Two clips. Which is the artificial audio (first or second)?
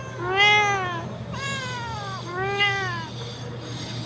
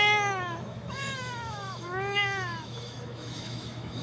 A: second